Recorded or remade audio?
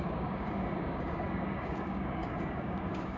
remade